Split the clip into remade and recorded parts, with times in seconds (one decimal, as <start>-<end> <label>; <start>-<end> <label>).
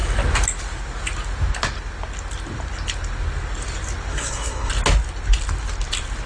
0.0-4.1 recorded; 4.1-4.7 remade; 4.7-6.3 recorded